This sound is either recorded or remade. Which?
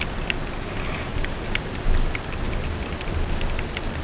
recorded